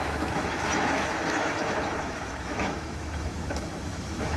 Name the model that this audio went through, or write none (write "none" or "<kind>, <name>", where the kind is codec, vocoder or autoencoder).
autoencoder, DAC-VAE